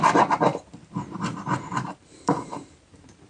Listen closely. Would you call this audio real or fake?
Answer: fake